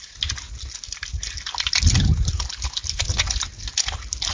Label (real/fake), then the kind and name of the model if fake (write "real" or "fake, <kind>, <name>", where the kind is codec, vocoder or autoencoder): real